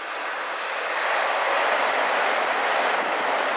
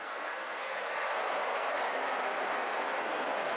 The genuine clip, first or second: first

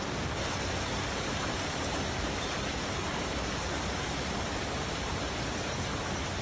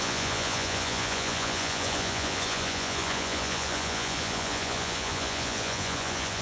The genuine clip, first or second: first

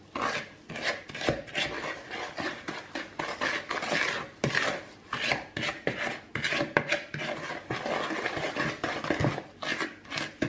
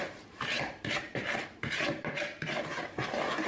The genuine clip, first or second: first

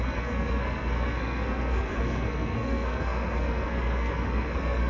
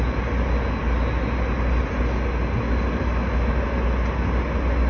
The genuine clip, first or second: second